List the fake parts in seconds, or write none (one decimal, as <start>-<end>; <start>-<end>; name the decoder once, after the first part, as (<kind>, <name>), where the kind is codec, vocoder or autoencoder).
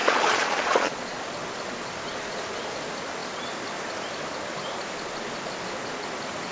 0.0-1.2 (vocoder, Vocos)